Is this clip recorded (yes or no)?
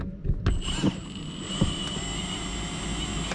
yes